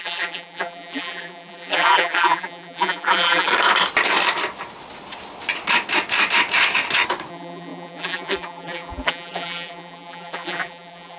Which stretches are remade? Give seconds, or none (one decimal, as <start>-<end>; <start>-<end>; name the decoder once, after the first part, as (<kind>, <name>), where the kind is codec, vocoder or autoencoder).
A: 0.0-3.5 (vocoder, BigVGAN v2); 7.3-11.2